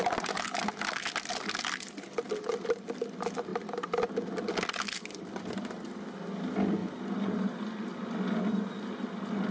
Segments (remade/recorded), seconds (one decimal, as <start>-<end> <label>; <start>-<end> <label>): 0.0-9.5 recorded